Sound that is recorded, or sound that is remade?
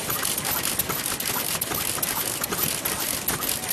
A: recorded